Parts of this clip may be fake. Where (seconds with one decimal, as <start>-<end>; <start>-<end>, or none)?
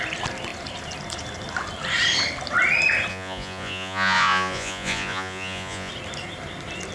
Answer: 3.1-5.9